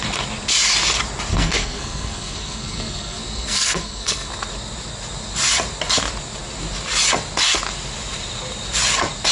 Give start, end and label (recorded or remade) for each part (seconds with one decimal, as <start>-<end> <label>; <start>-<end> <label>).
0.0-1.3 recorded; 1.3-4.3 remade; 4.3-9.3 recorded

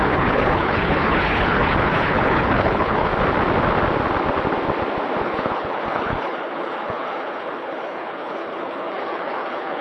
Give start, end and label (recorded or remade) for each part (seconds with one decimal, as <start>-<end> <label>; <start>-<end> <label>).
0.0-3.1 remade; 3.1-5.2 recorded; 5.2-9.8 remade